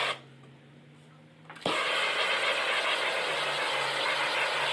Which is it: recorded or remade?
recorded